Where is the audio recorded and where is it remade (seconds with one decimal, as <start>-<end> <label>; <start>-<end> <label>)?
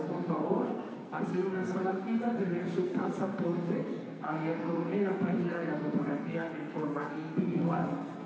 0.0-8.3 remade